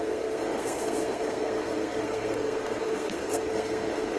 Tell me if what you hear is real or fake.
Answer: fake